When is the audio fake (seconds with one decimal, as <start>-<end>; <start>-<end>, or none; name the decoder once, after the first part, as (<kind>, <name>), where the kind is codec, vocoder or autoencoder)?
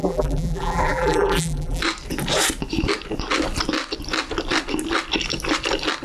0.0-1.8 (vocoder, BigVGAN v2)